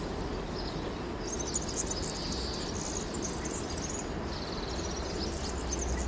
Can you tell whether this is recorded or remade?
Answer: recorded